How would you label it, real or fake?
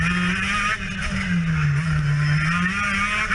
real